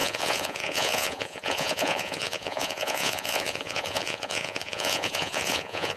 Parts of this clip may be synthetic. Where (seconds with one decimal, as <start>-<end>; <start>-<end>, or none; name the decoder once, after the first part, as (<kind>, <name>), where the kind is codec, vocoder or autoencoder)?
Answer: 0.0-6.0 (vocoder, Vocos)